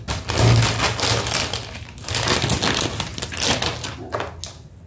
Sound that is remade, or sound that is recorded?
recorded